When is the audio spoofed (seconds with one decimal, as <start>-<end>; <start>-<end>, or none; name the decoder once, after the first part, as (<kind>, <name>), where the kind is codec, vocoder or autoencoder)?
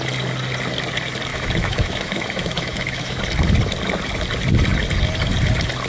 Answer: 1.3-3.2 (autoencoder, DAC-VAE)